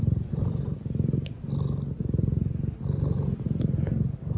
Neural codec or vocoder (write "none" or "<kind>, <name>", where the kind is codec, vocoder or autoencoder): none